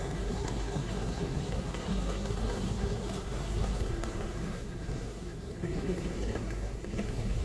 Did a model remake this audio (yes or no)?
yes